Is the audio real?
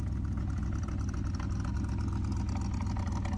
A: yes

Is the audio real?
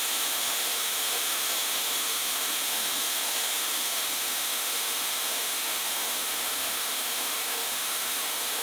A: no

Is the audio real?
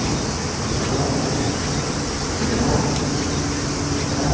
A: yes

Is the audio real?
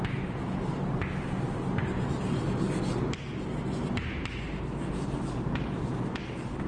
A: yes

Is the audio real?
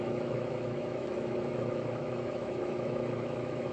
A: no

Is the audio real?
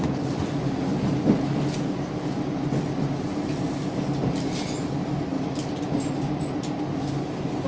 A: yes